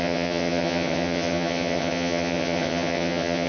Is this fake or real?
fake